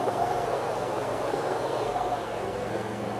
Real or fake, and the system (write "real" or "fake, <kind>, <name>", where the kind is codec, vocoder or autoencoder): fake, codec, SNAC